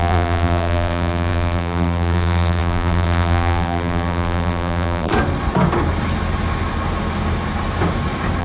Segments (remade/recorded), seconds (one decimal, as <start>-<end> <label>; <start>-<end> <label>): 0.0-5.1 remade; 5.1-8.4 recorded